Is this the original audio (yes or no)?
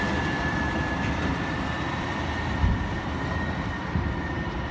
no